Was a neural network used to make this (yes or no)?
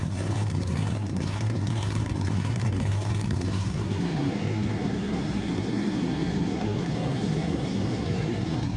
yes